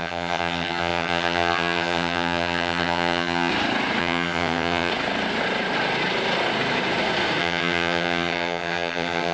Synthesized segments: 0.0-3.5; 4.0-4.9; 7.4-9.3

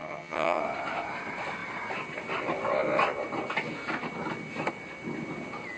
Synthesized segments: 0.0-0.6

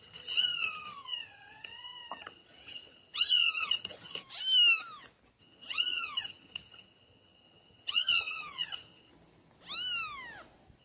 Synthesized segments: 0.0-4.2; 5.4-9.1

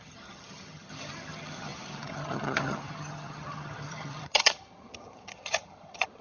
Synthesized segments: 0.0-6.2

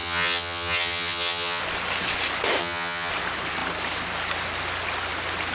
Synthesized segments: 0.0-1.6; 2.6-3.1